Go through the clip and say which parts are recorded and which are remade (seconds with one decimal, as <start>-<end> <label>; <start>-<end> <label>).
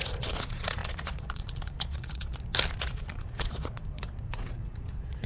0.0-2.3 remade; 2.3-2.8 recorded; 2.8-5.3 remade